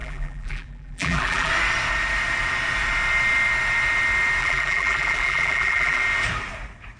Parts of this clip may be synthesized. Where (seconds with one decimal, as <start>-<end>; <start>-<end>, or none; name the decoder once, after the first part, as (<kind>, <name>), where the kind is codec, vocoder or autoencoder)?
0.0-1.5 (vocoder, BigVGAN v2); 4.4-6.0